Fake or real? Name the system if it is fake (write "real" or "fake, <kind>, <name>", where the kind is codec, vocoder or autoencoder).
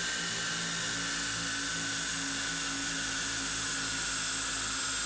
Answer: real